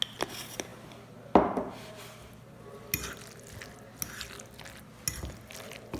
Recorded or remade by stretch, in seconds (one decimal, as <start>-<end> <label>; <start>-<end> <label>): 0.0-6.0 recorded